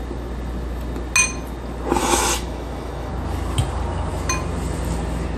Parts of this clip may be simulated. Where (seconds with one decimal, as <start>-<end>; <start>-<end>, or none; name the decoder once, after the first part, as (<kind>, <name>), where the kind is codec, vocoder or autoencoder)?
2.0-3.1 (autoencoder, DAC-VAE)